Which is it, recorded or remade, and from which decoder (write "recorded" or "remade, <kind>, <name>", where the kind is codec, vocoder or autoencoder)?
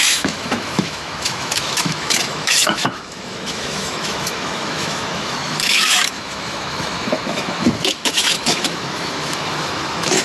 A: remade, autoencoder, DAC-VAE